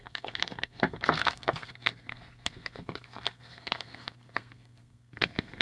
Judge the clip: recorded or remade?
remade